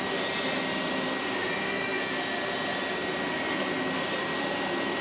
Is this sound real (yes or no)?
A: yes